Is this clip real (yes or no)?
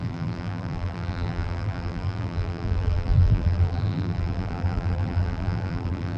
no